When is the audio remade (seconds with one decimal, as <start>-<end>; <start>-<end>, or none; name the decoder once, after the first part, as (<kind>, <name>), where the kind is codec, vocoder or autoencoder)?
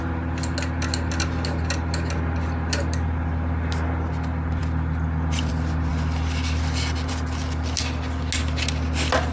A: none